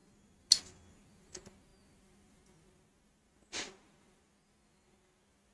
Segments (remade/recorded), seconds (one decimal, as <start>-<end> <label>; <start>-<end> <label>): 0.0-5.5 recorded